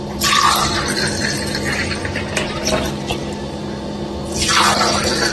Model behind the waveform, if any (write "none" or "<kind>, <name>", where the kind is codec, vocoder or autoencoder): vocoder, BigVGAN v2